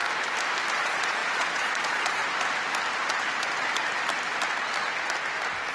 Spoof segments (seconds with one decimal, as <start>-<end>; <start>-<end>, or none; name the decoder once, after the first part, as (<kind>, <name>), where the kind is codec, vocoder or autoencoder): 0.7-2.2 (vocoder, Vocos)